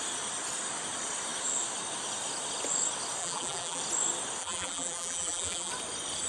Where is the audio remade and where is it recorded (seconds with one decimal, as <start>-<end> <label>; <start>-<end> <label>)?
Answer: 0.0-3.2 recorded; 3.2-3.8 remade; 3.8-4.4 recorded; 4.4-5.7 remade; 5.7-6.3 recorded